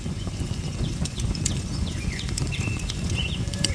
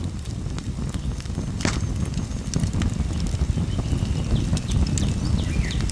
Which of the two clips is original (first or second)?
second